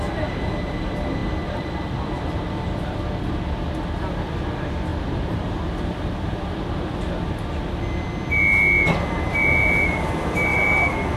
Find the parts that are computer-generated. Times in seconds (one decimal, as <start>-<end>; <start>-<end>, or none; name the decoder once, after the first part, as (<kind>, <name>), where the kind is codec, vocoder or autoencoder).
1.2-4.2 (vocoder, BigVGAN v2); 4.9-7.0